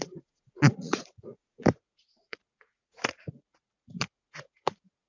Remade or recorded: remade